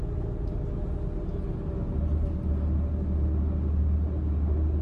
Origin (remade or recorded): recorded